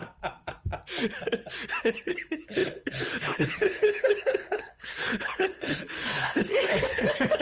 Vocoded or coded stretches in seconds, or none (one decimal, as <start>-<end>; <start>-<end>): 1.8-7.4